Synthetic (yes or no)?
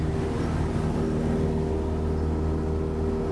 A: no